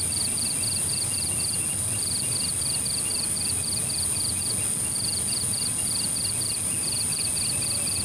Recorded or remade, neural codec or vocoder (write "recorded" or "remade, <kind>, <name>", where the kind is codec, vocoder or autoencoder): recorded